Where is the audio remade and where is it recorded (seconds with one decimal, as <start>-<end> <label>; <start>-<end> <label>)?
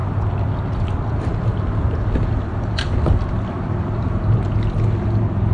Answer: 0.0-5.5 recorded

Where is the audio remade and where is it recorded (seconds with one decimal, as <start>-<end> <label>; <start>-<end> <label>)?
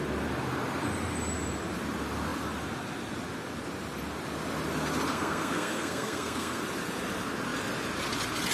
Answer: 0.0-5.1 recorded; 5.1-6.6 remade; 6.6-8.5 recorded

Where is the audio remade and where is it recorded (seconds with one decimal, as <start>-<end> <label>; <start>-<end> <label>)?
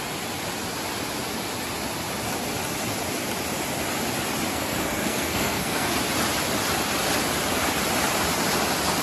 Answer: 0.0-4.5 recorded; 4.5-6.0 remade; 6.0-9.0 recorded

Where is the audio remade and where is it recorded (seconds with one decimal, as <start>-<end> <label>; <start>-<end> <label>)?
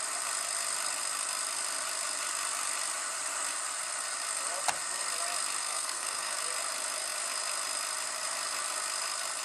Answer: 0.0-5.6 recorded; 5.6-6.4 remade; 6.4-9.4 recorded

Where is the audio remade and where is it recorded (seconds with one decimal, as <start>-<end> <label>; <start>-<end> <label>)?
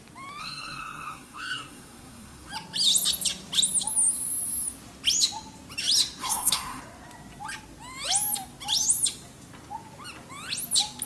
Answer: 0.0-0.4 recorded; 0.4-2.5 remade; 2.5-6.2 recorded; 6.2-6.8 remade; 6.8-11.1 recorded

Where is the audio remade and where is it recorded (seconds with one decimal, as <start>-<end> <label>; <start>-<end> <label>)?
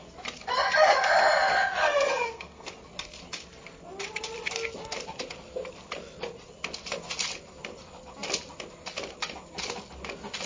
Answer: 0.0-1.8 recorded; 1.8-2.7 remade; 2.7-10.5 recorded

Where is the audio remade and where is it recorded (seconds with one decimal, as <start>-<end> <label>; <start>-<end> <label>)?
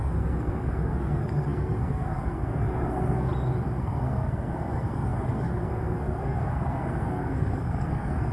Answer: 0.0-3.3 remade; 3.3-3.8 recorded; 3.8-8.3 remade